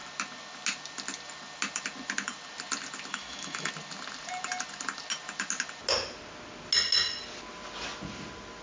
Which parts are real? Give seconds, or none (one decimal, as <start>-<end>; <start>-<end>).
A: 0.0-3.1; 3.7-8.6